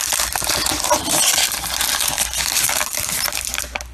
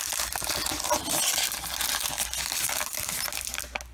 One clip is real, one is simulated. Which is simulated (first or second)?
first